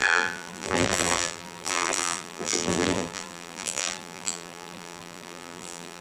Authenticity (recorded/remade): remade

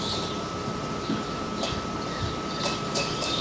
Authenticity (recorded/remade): remade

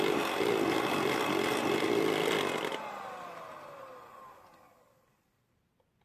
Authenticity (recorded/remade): recorded